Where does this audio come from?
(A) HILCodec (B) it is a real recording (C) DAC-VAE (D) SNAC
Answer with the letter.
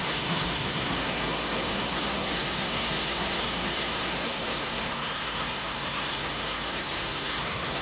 D